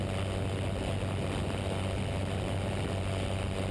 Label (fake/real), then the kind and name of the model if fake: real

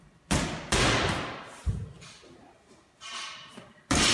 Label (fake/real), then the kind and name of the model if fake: real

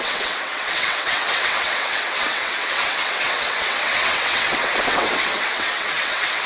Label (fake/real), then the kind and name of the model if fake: fake, vocoder, WaveNeXt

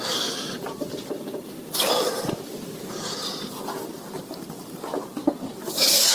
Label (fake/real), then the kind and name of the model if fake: real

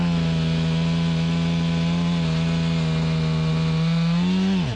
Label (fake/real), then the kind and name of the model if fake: real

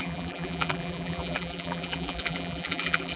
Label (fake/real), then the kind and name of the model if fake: fake, vocoder, BigVGAN v2